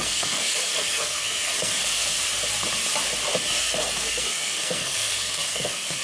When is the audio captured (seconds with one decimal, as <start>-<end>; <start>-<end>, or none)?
2.2-3.4